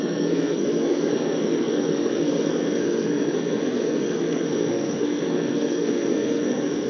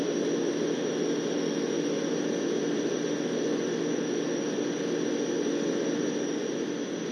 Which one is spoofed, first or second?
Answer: first